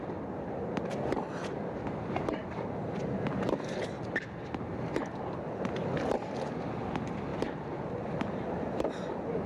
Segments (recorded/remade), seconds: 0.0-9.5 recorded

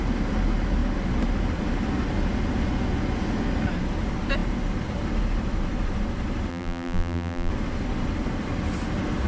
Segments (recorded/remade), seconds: 0.0-6.5 recorded; 6.5-7.5 remade; 7.5-9.3 recorded

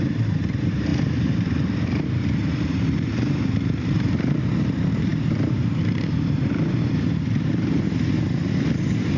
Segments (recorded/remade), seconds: 0.0-9.2 remade

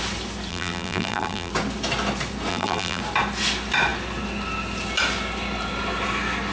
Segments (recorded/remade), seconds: 0.0-0.5 recorded; 0.5-1.5 remade; 1.5-2.5 recorded; 2.5-3.0 remade; 3.0-6.5 recorded

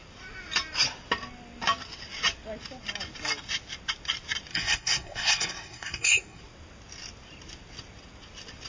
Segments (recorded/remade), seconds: 0.0-4.5 recorded; 4.5-6.4 remade; 6.4-8.7 recorded

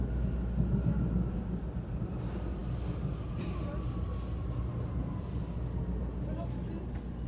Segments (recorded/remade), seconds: 0.0-7.3 recorded